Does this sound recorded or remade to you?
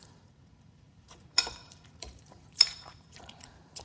remade